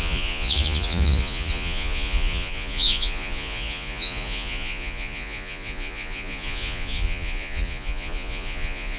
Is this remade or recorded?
remade